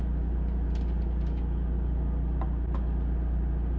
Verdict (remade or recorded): recorded